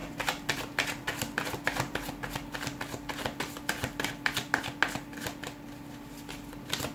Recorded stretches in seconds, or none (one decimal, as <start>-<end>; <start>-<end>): 0.0-6.9